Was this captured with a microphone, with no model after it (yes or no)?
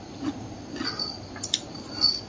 yes